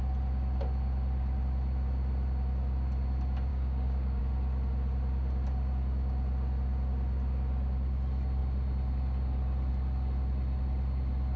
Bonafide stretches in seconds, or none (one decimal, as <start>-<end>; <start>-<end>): 0.0-3.5; 4.2-11.4